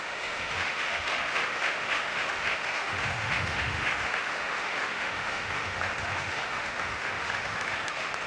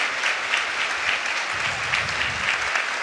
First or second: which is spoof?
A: first